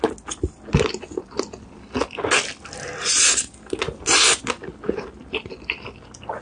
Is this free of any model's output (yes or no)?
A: yes